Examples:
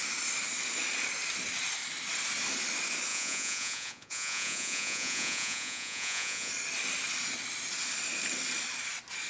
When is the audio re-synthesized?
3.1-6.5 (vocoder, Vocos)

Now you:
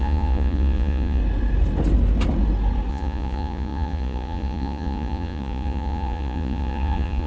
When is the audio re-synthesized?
0.0-1.2 (vocoder, Vocos); 2.9-7.3

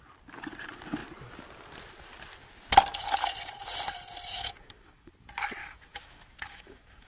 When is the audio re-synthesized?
4.3-5.1 (autoencoder, DAC-VAE); 5.6-7.1

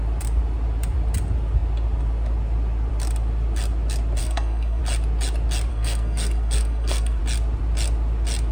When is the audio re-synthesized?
4.2-4.8 (codec, SNAC); 5.7-7.2

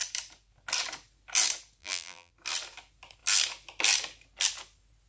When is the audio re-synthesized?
1.8-2.3 (vocoder, BigVGAN v2)

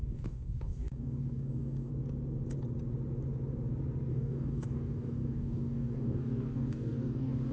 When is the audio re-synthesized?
0.0-1.9 (codec, DAC); 4.1-7.5